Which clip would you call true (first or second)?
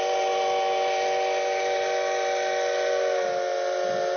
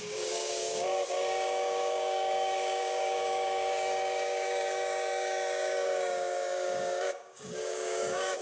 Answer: first